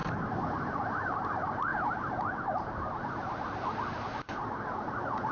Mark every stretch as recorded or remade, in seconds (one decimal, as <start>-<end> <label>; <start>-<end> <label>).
0.0-1.7 recorded; 1.7-2.9 remade; 2.9-5.3 recorded